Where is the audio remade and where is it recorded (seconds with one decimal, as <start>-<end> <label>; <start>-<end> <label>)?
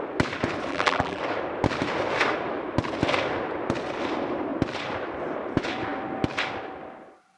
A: 0.0-0.7 recorded; 0.7-1.2 remade; 1.2-7.4 recorded